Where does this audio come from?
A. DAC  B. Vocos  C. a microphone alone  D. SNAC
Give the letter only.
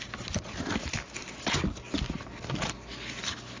C